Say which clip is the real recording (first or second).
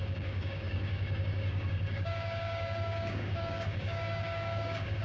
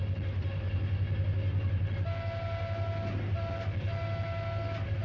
second